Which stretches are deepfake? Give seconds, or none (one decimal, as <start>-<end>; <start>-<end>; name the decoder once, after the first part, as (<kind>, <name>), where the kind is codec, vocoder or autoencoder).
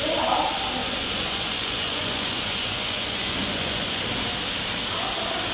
0.8-4.0 (vocoder, Vocos)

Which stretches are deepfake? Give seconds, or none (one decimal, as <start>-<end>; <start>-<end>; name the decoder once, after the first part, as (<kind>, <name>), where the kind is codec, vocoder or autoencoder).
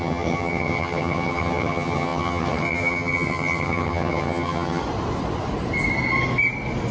0.0-4.8 (vocoder, HiFi-GAN)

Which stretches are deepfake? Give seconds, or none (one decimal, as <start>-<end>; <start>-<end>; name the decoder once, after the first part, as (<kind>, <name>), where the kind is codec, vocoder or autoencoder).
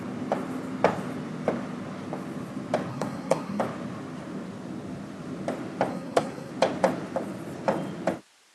2.9-3.6 (codec, SNAC); 5.9-6.5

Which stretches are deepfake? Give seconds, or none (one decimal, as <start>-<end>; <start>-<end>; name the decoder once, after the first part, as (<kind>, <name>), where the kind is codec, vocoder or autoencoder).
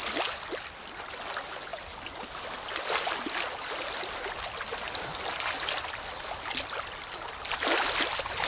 none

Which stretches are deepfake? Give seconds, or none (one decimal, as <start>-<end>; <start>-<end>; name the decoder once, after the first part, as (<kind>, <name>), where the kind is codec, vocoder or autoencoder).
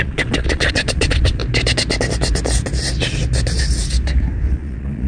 0.0-1.4 (vocoder, Vocos); 4.5-5.1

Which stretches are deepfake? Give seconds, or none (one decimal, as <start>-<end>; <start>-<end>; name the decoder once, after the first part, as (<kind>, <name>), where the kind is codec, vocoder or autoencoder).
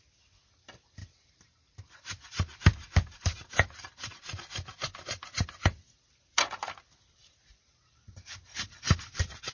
1.0-4.1 (vocoder, BigVGAN v2)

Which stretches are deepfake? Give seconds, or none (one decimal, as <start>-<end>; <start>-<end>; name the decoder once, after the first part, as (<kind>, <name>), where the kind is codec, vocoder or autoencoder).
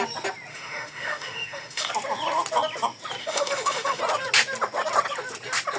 0.5-1.9 (autoencoder, DAC-VAE); 3.2-4.0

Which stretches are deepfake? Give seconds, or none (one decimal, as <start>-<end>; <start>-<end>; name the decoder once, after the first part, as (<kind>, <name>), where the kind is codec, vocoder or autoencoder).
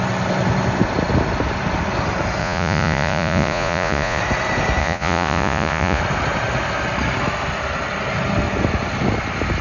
2.4-4.2 (vocoder, Vocos); 4.8-6.0